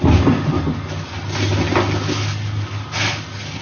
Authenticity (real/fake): real